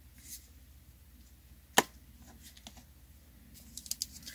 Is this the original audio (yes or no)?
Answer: yes